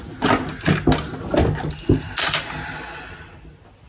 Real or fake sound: real